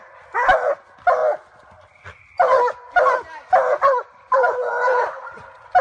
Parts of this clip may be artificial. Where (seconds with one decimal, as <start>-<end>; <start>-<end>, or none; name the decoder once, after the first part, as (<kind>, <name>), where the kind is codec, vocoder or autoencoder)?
none